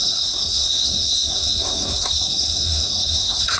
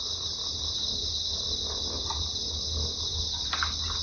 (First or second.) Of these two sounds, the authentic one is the second